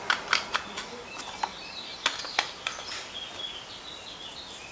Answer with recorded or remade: recorded